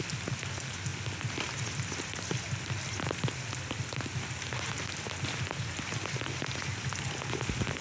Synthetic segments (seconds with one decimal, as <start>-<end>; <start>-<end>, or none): none